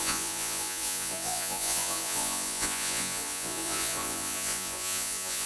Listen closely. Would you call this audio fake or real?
fake